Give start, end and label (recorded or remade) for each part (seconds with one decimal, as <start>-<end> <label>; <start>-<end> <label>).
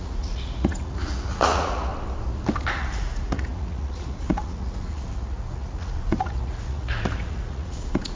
0.0-1.9 remade; 1.9-2.7 recorded; 2.7-8.2 remade